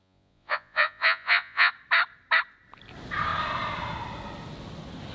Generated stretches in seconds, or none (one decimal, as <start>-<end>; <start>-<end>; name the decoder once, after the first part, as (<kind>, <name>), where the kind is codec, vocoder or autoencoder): 0.0-1.7 (vocoder, Vocos)